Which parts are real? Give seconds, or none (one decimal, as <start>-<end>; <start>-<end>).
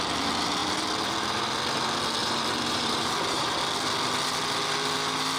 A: 0.0-2.2; 3.6-5.4